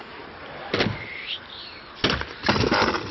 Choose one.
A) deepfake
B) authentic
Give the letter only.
B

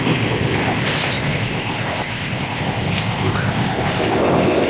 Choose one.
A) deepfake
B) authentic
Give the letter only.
A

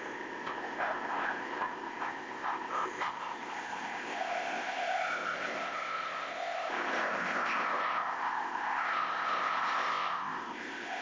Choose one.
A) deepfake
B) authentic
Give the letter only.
A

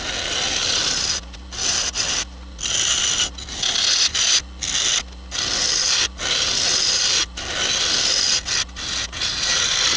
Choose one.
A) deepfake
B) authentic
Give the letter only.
B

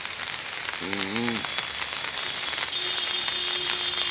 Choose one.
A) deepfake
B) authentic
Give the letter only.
B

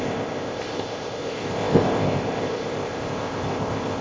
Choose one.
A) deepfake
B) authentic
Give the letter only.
A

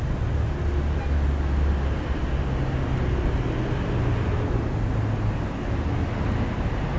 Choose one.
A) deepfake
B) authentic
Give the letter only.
B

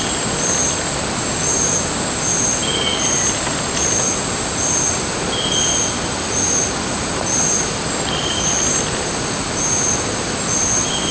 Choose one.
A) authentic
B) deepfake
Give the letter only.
A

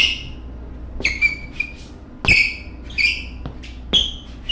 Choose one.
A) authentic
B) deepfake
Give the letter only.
A